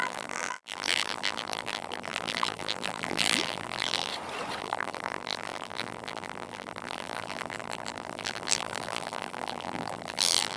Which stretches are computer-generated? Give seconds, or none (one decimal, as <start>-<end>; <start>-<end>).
0.0-4.1; 4.6-10.6